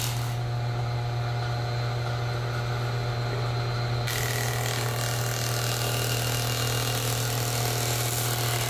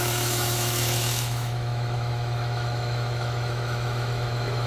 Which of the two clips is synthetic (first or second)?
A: second